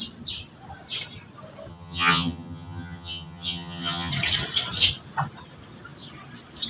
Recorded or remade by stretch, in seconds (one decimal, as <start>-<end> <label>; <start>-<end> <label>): 0.0-1.7 recorded; 1.7-4.1 remade; 4.1-6.7 recorded